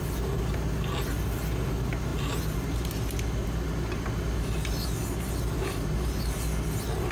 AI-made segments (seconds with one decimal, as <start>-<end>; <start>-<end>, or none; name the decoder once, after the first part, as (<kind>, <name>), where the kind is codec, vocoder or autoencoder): none